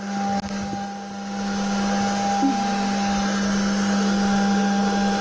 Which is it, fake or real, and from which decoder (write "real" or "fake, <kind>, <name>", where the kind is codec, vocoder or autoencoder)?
real